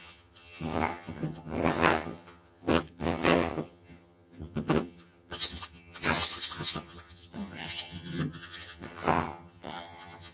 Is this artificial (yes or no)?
yes